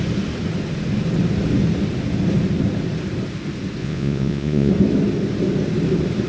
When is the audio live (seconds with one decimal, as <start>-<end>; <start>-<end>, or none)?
0.0-3.8; 4.7-6.3